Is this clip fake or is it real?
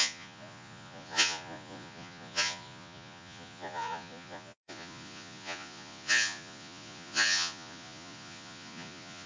fake